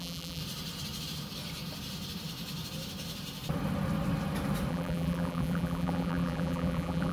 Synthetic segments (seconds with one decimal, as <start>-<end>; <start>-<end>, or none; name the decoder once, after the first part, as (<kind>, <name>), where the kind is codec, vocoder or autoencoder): 0.0-0.4 (vocoder, BigVGAN v2); 4.7-7.1